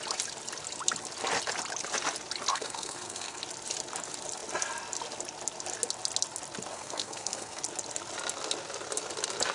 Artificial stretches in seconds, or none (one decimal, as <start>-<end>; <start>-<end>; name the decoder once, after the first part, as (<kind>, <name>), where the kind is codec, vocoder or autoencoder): 2.5-3.4 (codec, SNAC); 6.7-7.6